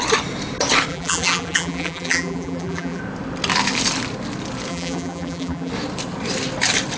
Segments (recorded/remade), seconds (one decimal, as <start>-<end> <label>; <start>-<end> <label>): 0.0-0.9 recorded; 0.9-3.0 remade; 3.0-4.7 recorded; 4.7-5.7 remade; 5.7-7.0 recorded